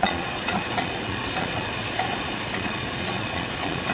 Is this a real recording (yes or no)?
no